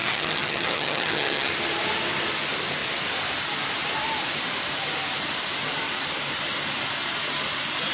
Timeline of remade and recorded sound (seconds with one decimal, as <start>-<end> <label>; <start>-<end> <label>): 0.0-1.5 remade; 1.5-7.9 recorded